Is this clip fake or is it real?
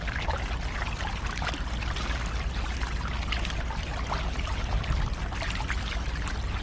real